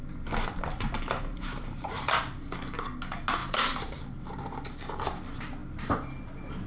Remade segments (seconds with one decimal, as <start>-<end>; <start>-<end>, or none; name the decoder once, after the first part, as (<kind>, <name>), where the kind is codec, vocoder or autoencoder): 1.3-2.2 (vocoder, BigVGAN v2); 3.4-4.0